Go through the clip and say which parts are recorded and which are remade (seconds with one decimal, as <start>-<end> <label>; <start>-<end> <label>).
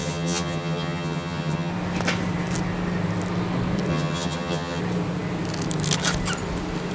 0.0-1.7 remade; 1.7-3.9 recorded; 3.9-4.8 remade; 4.8-6.9 recorded